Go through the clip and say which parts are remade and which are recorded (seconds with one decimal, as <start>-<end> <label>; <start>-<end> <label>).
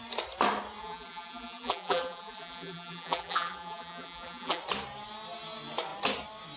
0.0-0.8 recorded; 0.8-4.6 remade; 4.6-6.6 recorded